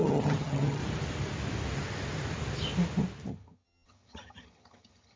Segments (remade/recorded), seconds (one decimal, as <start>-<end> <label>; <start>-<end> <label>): 0.0-0.8 remade; 0.8-3.3 recorded; 3.3-5.2 remade